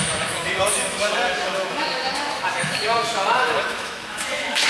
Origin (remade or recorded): remade